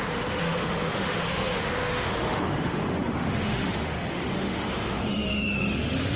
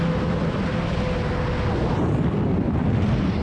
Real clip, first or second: second